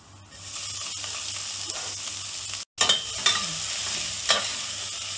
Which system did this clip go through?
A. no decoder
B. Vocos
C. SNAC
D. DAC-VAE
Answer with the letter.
A